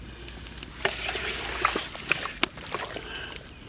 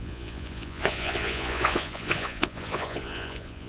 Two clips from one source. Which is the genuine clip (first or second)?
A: first